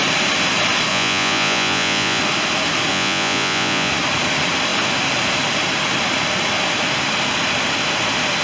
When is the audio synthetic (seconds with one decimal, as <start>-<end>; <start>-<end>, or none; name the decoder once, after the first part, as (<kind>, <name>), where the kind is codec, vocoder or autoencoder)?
0.9-2.2 (vocoder, Vocos); 2.9-3.9